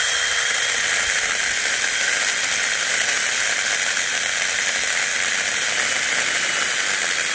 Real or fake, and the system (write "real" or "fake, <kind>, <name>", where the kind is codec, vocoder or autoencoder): fake, vocoder, BigVGAN v2